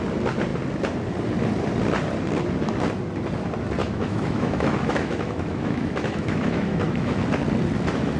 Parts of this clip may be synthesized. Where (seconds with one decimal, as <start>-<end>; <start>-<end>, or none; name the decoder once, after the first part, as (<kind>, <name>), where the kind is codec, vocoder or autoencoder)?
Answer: 3.8-7.2 (autoencoder, DAC-VAE)